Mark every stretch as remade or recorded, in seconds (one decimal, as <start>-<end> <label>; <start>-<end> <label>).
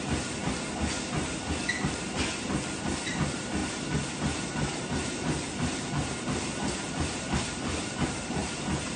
0.0-0.4 remade; 0.4-3.2 recorded; 3.2-3.6 remade; 3.6-4.2 recorded; 4.2-9.0 remade